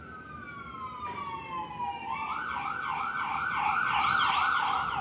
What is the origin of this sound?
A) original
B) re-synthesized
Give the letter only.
A